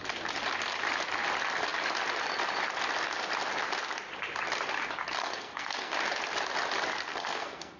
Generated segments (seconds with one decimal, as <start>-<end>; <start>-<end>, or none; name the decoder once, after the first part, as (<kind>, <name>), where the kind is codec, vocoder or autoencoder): 5.2-5.9 (codec, SNAC); 7.1-7.8